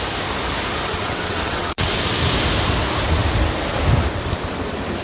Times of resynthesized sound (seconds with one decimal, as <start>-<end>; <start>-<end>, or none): 0.9-1.9